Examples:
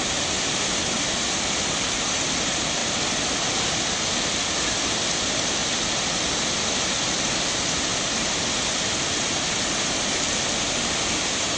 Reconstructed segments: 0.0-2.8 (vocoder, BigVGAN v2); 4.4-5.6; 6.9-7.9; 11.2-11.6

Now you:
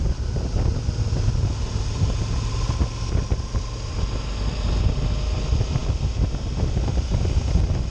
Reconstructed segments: none

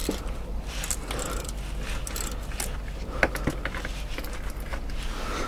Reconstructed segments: none

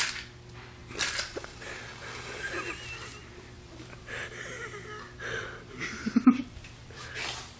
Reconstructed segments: 0.8-2.0 (vocoder, BigVGAN v2); 3.2-4.3; 6.0-7.0

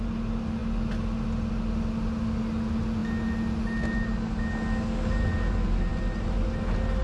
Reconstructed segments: none

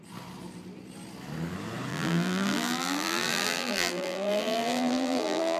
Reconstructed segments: 1.9-5.6 (vocoder, BigVGAN v2)

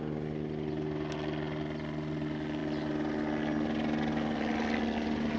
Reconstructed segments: none

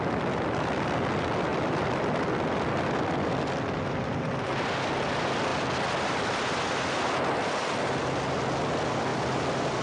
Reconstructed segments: 1.5-4.3 (vocoder, BigVGAN v2); 9.1-9.8